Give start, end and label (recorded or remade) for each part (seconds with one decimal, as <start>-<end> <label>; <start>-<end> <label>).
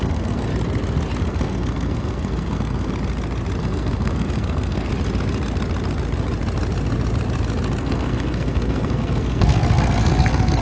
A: 0.0-0.5 remade; 0.5-1.2 recorded; 1.2-2.9 remade; 2.9-3.6 recorded; 3.6-4.9 remade; 4.9-7.8 recorded; 7.8-10.6 remade